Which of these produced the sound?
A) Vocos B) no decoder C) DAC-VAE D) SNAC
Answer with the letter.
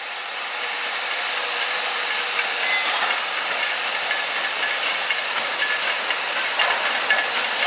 B